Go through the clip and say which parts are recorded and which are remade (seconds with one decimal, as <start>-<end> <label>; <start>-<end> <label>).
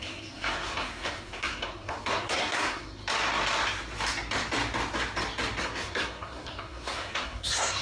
0.0-3.0 remade; 3.0-5.6 recorded; 5.6-7.8 remade